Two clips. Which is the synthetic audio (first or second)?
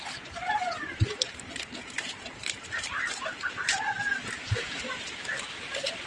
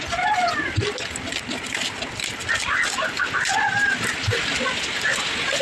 first